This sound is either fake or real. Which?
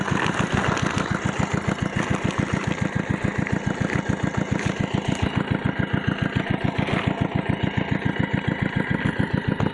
real